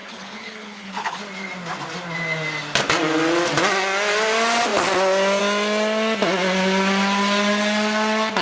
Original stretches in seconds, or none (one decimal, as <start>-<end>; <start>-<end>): 1.2-8.4

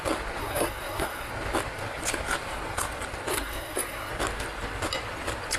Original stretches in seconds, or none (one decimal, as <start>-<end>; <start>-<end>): 0.0-0.4; 1.3-3.3; 4.1-5.6

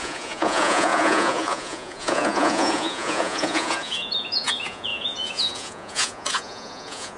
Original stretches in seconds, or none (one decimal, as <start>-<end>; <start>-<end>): none

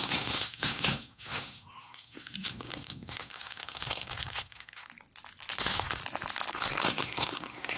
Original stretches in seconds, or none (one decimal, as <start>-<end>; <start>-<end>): 4.9-5.6; 6.0-6.5

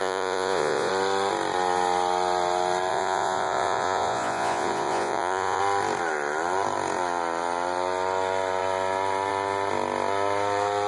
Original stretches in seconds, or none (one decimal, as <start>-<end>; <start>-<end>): 0.9-2.9; 5.6-10.9

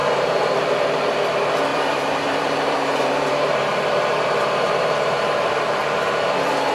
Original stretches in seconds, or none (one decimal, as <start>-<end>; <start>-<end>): 1.1-1.7; 5.7-6.7